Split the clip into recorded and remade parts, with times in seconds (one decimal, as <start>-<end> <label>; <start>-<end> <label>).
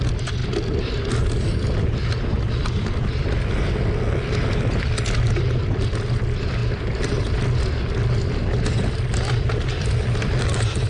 0.0-10.9 recorded